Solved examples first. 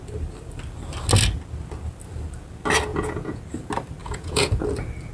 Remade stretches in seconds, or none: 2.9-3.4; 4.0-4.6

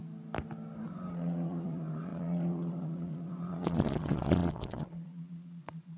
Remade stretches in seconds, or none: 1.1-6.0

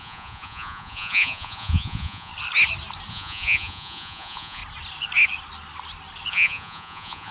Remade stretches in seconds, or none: 0.0-2.3; 3.1-4.6; 6.3-7.3

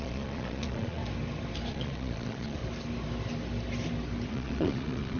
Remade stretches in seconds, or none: 0.0-1.0; 1.7-2.6; 4.3-5.2

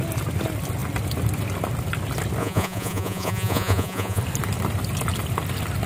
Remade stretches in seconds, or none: 2.4-4.2

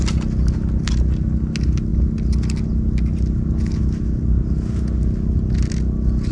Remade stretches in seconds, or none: none

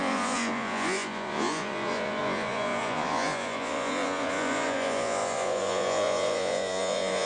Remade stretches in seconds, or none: 0.0-7.3